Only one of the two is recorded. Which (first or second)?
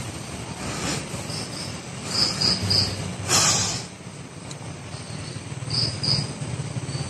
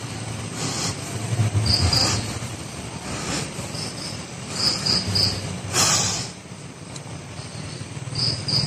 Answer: first